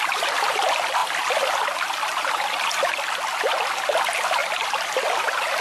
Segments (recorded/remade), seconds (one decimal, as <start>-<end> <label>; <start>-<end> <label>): 0.0-5.6 recorded